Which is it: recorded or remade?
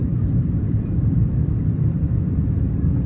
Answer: remade